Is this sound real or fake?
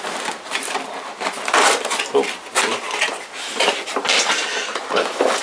real